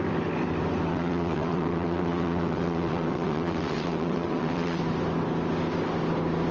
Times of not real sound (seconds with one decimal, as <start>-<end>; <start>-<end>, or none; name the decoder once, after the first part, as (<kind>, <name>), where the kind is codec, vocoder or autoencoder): 0.9-4.8 (vocoder, WaveNeXt)